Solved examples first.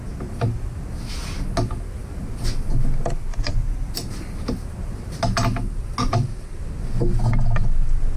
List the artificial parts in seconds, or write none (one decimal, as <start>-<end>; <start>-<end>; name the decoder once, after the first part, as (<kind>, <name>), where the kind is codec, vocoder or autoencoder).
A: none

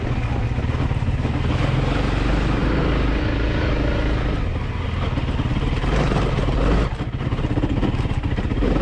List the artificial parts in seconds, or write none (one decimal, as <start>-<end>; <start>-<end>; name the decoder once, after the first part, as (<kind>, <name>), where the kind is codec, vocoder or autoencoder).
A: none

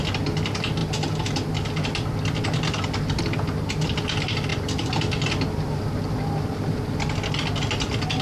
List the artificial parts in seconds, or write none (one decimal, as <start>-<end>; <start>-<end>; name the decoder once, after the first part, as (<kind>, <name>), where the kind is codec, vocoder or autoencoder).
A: none

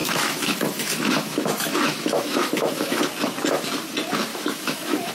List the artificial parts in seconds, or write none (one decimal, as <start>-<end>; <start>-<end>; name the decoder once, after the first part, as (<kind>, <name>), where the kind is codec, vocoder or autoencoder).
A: 0.0-3.1 (autoencoder, DAC-VAE); 4.3-5.1